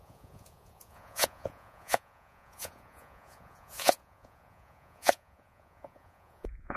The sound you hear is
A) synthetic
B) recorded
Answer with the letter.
A